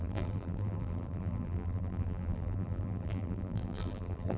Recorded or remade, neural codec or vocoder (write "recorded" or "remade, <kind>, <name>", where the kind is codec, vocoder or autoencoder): remade, vocoder, BigVGAN v2